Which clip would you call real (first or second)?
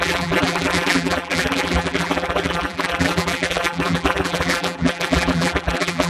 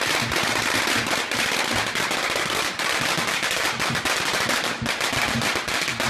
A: second